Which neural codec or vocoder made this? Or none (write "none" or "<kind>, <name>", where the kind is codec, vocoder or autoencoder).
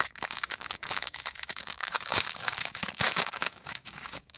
codec, DAC